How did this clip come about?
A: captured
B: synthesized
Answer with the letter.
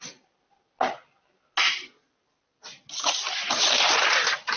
A